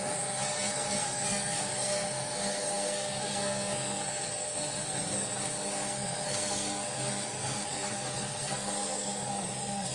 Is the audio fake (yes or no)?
yes